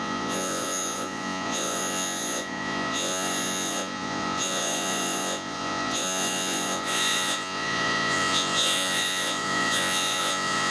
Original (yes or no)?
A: no